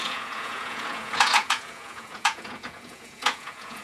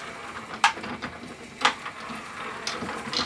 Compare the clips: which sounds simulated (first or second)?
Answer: first